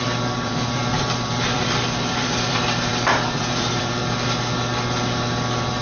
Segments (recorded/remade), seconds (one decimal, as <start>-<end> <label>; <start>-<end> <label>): 0.0-2.9 remade; 2.9-3.4 recorded; 3.4-4.0 remade; 4.0-5.8 recorded